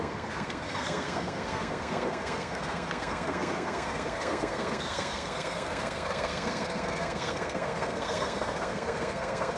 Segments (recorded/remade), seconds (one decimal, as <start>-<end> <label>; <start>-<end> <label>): 0.0-9.6 remade